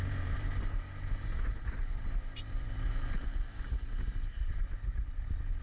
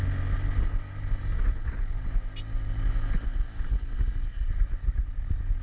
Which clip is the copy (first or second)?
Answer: first